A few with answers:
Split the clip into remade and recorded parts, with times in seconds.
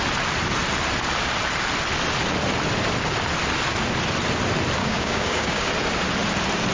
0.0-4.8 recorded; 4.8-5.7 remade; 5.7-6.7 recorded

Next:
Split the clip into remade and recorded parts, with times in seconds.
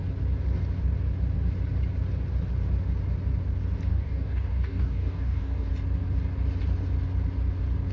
0.0-3.9 recorded; 3.9-5.7 remade; 5.7-7.9 recorded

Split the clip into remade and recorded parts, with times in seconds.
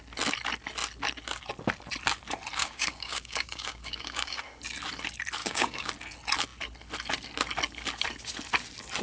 0.0-2.6 recorded; 2.6-4.4 remade; 4.4-5.4 recorded; 5.4-5.9 remade; 5.9-9.0 recorded